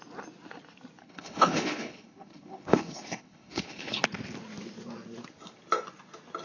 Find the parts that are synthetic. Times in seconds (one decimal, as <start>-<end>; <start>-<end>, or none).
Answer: 1.0-4.0